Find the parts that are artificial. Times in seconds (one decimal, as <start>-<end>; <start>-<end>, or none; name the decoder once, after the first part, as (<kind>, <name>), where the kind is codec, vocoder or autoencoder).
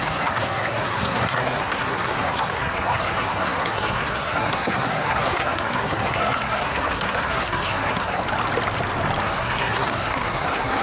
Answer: 0.0-8.2 (codec, SNAC); 9.2-10.8